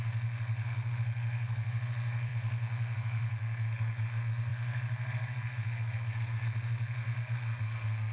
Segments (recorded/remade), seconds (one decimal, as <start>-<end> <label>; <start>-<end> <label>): 0.0-8.1 remade